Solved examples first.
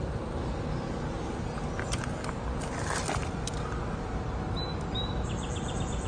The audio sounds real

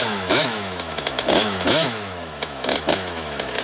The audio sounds fake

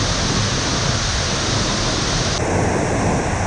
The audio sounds real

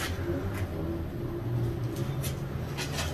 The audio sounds real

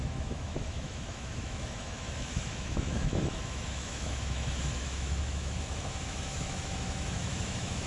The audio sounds fake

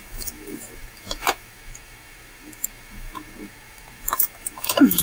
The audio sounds fake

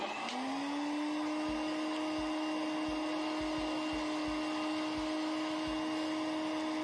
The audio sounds real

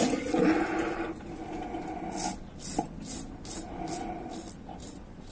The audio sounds real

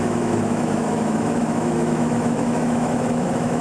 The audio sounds fake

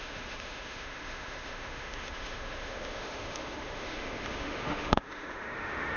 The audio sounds fake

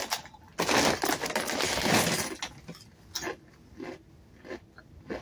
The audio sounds real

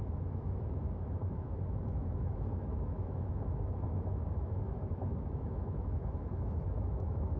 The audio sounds fake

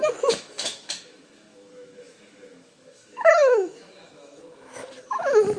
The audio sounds fake